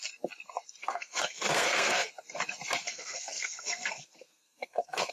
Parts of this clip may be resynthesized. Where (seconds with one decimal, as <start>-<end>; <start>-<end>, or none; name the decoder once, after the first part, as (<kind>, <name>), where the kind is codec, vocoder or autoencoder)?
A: 0.8-2.1 (codec, SNAC); 2.8-5.1